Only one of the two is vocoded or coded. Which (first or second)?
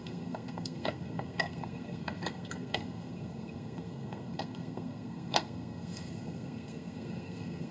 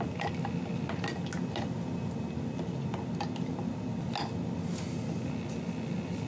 first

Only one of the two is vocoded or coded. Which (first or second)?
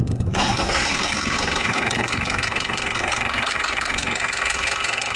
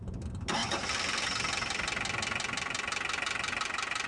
first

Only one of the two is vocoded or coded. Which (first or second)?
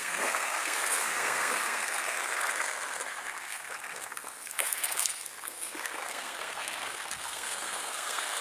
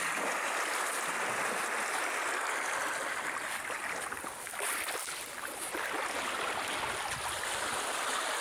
first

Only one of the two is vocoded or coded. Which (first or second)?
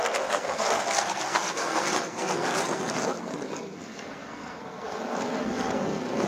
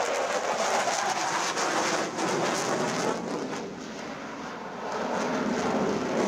first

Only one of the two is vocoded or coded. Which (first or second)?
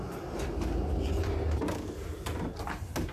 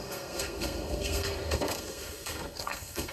second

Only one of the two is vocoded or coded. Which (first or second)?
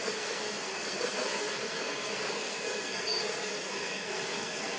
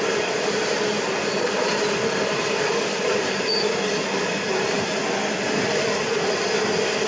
first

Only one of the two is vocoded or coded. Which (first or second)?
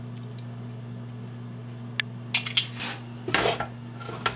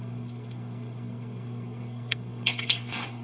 second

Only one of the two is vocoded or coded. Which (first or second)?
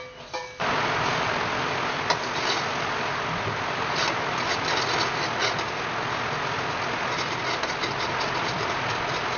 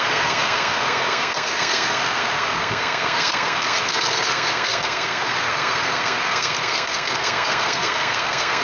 second